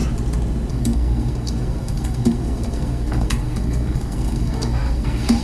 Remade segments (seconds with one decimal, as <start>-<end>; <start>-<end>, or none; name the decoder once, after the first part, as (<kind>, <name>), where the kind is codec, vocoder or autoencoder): 0.7-5.4 (codec, SNAC)